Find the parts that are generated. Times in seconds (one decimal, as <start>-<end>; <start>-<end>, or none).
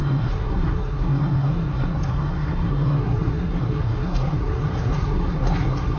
0.0-6.0